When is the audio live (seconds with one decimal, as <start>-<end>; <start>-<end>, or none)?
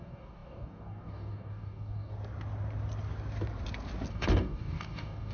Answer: 2.1-4.1